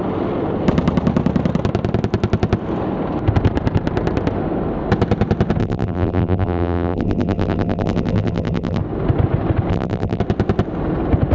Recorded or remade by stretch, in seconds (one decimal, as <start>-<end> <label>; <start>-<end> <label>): 0.0-5.6 recorded; 5.6-8.8 remade; 8.8-9.7 recorded; 9.7-10.2 remade; 10.2-11.3 recorded